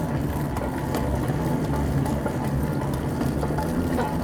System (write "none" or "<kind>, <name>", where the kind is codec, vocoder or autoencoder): none